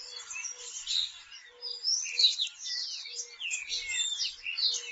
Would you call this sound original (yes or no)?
yes